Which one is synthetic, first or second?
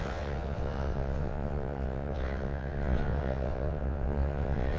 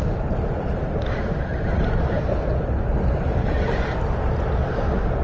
first